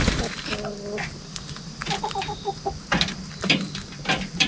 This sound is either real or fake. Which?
real